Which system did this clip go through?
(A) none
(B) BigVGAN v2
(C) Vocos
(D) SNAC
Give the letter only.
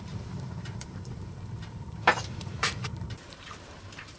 B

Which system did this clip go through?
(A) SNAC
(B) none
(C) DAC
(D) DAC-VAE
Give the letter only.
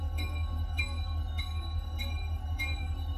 A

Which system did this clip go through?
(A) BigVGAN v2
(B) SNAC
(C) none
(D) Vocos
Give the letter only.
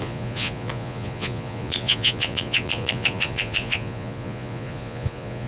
D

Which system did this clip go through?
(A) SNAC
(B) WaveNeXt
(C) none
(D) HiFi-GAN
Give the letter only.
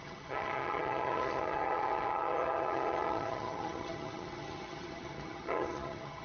D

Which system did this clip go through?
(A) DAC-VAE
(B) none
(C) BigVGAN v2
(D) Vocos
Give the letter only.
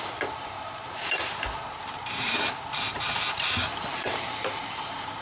C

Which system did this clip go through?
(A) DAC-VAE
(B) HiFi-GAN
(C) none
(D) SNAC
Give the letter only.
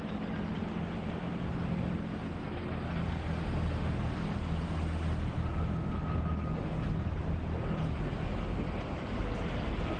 C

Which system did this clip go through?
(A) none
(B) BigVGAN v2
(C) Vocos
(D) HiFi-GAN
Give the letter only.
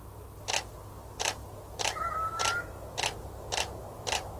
A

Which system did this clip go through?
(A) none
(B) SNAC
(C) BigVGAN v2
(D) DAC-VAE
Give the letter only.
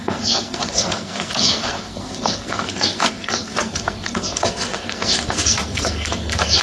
B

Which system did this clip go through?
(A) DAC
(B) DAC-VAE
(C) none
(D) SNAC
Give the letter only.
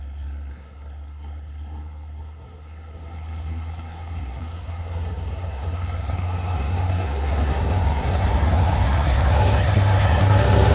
D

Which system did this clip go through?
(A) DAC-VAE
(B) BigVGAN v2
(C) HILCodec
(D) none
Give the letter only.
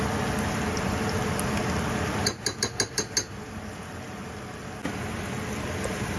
D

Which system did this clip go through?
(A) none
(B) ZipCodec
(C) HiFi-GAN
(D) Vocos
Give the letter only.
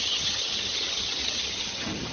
C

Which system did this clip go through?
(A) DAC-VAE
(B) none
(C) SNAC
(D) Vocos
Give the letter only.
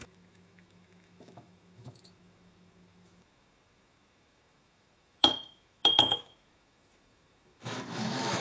A